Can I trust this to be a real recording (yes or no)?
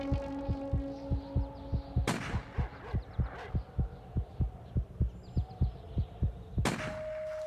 yes